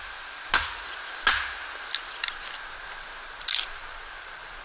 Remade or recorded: recorded